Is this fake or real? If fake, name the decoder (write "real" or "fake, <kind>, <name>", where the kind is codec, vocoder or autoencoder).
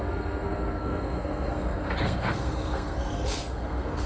fake, codec, SNAC